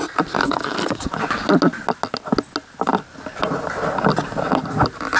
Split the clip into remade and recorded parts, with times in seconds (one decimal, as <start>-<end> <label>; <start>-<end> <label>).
0.0-0.4 recorded; 0.4-1.0 remade; 1.0-5.2 recorded